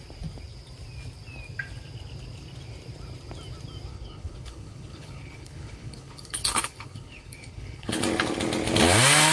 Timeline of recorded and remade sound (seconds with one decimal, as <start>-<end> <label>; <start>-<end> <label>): 0.0-3.9 recorded; 3.9-8.0 remade; 8.0-9.3 recorded